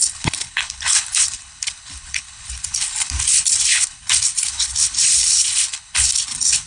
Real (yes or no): no